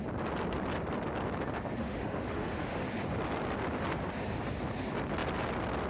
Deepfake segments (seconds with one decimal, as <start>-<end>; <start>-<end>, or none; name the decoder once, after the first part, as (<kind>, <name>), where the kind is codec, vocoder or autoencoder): 1.8-2.8 (autoencoder, DAC-VAE)